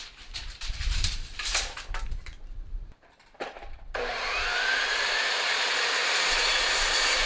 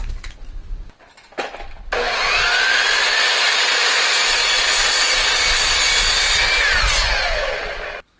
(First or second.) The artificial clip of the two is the first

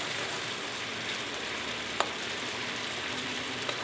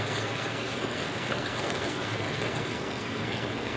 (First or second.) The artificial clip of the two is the second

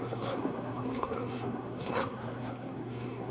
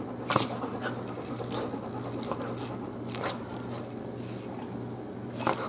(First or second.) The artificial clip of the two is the first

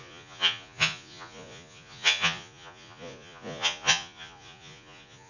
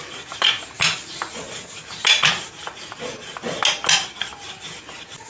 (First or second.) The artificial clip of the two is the first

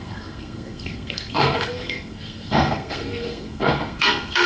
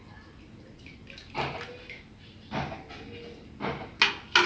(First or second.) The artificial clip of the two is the first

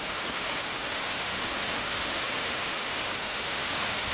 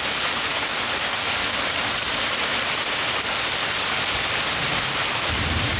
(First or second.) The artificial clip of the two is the first